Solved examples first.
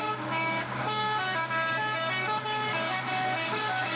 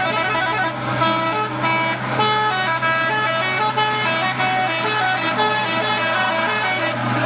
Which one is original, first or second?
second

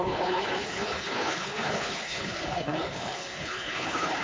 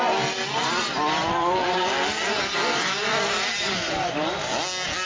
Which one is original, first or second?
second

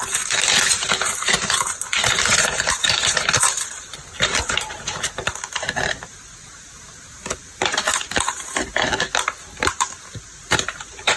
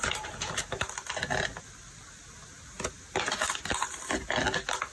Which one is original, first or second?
second